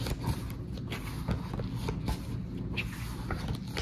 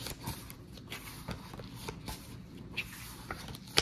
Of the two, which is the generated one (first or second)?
second